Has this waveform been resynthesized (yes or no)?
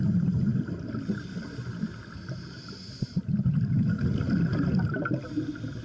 no